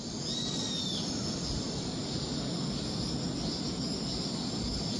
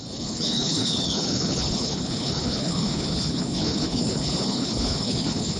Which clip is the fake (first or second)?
second